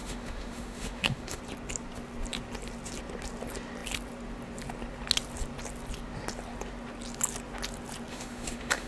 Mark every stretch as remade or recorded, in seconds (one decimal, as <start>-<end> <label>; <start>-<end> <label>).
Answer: 0.0-1.4 remade; 1.4-8.1 recorded; 8.1-8.9 remade